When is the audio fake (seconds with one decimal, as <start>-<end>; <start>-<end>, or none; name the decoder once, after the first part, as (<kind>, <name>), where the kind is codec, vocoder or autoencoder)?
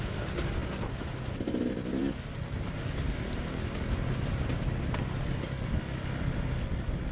none